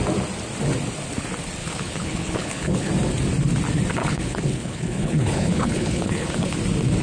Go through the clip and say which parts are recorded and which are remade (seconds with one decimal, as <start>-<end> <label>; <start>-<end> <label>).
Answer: 0.0-1.6 recorded; 1.6-2.9 remade; 2.9-4.0 recorded; 4.0-6.6 remade; 6.6-7.0 recorded